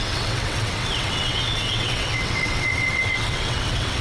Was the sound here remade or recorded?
remade